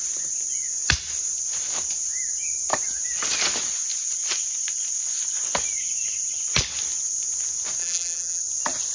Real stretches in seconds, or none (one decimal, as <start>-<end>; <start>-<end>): 0.0-7.8; 8.4-8.9